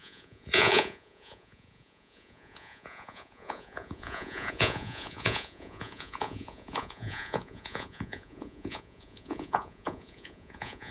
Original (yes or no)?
no